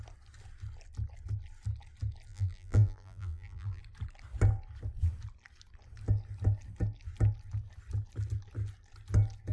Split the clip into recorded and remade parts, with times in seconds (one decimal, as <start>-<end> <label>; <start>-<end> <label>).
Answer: 0.0-2.3 recorded; 2.3-3.8 remade; 3.8-9.5 recorded